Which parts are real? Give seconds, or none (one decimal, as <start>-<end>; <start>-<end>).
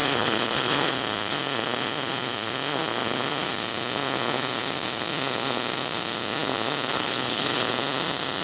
0.9-6.9; 7.7-8.4